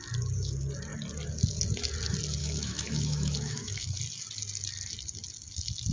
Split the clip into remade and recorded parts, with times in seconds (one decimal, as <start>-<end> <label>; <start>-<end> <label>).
0.0-2.4 recorded; 2.4-4.0 remade; 4.0-5.9 recorded